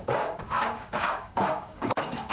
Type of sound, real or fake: fake